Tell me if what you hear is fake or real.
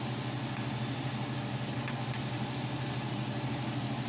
real